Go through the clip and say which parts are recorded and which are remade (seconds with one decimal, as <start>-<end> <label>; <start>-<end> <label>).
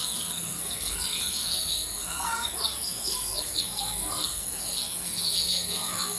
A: 0.0-6.2 remade